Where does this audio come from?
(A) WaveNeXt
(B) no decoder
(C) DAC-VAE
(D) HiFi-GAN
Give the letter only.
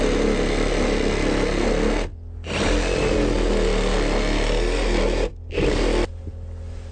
B